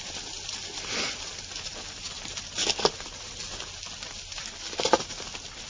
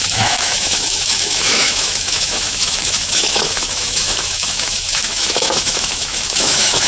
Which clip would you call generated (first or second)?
second